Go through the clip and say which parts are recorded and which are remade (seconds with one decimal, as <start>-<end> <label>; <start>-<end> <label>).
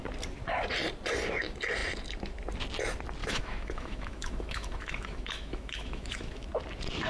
0.0-3.2 recorded; 3.2-6.5 remade; 6.5-7.1 recorded